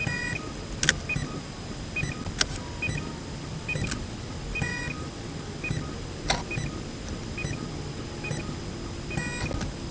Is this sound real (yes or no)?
yes